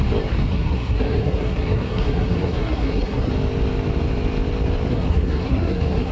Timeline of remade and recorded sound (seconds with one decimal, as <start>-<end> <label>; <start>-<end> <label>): 0.0-0.5 recorded; 0.5-3.3 remade; 3.3-4.9 recorded; 4.9-6.1 remade